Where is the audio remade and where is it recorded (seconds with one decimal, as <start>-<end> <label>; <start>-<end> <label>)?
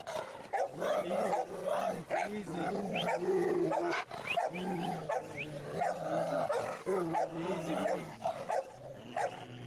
0.0-9.7 recorded